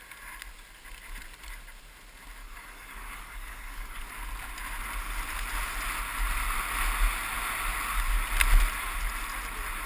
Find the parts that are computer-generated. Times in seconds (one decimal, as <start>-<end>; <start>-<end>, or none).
2.4-4.0